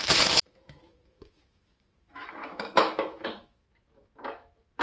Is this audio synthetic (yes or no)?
yes